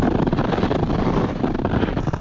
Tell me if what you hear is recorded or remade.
recorded